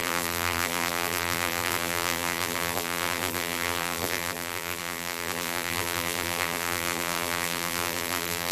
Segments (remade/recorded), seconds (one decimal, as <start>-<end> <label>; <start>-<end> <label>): 0.0-8.5 remade